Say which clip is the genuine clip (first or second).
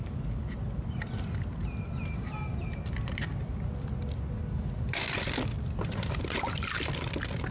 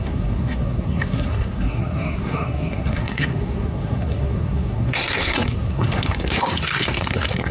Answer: first